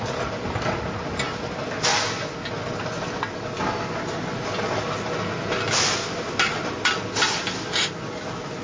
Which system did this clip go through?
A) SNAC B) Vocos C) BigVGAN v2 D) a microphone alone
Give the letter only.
D